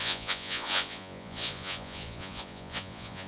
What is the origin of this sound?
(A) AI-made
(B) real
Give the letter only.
A